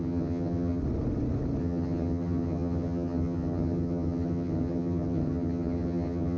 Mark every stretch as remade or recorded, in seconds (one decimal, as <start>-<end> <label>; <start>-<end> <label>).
0.0-0.8 remade; 0.8-1.6 recorded; 1.6-6.4 remade